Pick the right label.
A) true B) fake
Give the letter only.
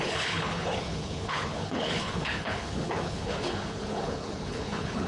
B